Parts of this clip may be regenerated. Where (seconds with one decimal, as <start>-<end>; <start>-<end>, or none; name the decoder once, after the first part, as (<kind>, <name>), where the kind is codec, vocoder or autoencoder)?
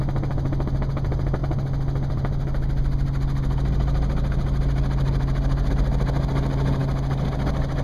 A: none